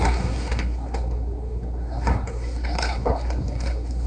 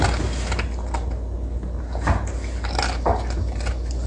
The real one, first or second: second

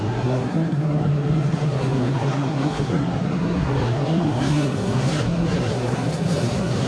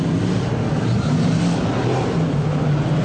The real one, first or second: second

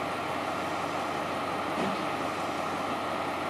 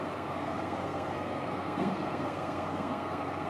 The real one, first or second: first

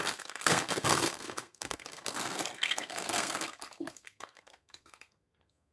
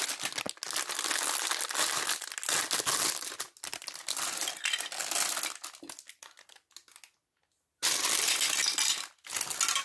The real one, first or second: second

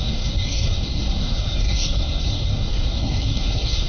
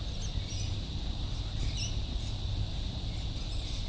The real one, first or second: second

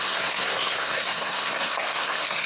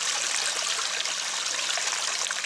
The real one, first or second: second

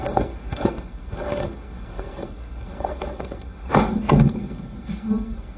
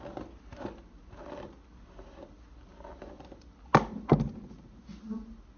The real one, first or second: second